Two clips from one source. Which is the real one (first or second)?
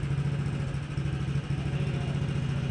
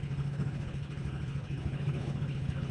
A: first